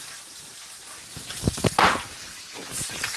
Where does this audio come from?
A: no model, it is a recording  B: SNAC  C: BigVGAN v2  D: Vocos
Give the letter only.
C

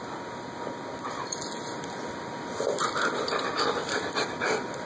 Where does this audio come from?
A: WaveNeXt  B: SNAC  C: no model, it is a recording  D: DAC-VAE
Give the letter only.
C